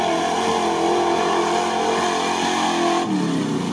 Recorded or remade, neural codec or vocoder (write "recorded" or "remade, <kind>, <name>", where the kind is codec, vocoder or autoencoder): recorded